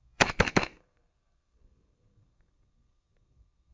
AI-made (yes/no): yes